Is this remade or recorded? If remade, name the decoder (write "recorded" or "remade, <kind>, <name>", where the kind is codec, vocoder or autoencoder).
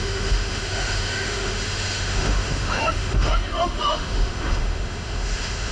remade, autoencoder, DAC-VAE